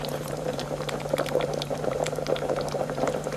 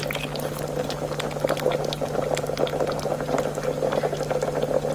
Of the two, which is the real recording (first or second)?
second